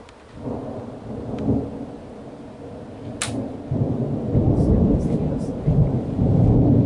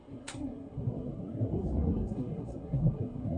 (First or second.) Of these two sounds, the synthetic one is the second